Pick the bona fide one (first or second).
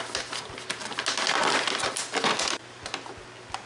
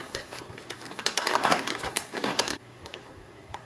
first